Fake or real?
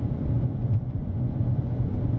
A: fake